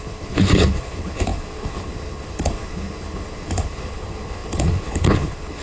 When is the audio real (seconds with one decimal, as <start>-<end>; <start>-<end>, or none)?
none